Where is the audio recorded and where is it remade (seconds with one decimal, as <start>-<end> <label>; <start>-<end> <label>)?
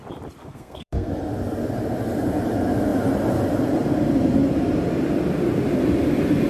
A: 0.0-0.4 recorded; 0.4-1.1 remade; 1.1-6.5 recorded